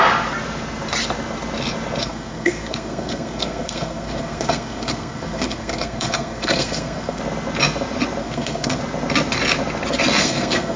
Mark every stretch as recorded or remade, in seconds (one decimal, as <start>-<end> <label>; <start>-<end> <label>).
0.0-2.0 recorded; 2.0-7.2 remade; 7.2-8.2 recorded; 8.2-8.8 remade; 8.8-10.2 recorded; 10.2-10.8 remade